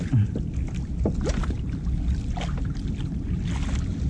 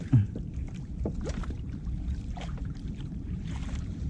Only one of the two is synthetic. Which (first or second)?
second